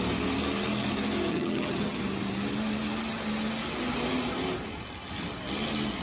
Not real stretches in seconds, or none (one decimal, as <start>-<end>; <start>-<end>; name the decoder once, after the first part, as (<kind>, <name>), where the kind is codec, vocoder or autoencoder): 1.3-2.0 (vocoder, HiFi-GAN)